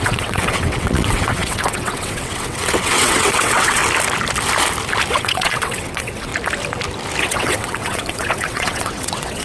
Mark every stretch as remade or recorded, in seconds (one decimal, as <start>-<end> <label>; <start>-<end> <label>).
0.0-3.8 remade; 3.8-5.1 recorded; 5.1-6.3 remade; 6.3-7.2 recorded; 7.2-9.4 remade